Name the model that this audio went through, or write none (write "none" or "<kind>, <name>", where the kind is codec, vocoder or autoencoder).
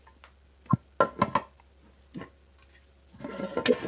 none